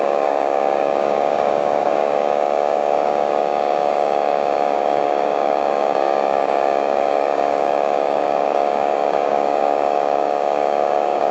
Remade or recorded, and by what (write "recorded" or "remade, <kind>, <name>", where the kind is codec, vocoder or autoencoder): remade, codec, DAC